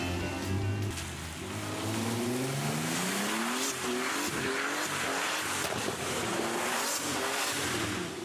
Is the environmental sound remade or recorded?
recorded